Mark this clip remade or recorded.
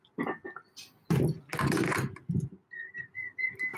recorded